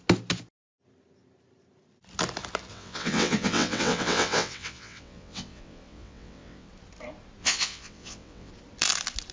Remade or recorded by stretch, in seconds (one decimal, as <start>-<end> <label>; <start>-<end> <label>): 0.0-2.7 recorded; 2.7-6.7 remade; 6.7-7.4 recorded; 7.4-8.5 remade; 8.5-9.3 recorded